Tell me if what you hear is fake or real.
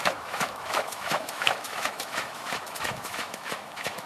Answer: fake